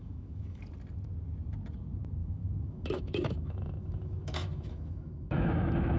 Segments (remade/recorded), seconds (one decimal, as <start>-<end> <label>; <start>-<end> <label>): 0.0-0.6 remade; 0.6-2.2 recorded; 2.2-6.0 remade